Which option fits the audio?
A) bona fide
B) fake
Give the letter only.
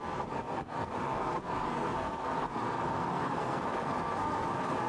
B